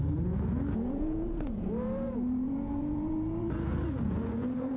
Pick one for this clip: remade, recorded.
remade